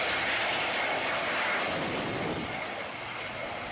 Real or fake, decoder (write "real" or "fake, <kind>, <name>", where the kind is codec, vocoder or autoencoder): real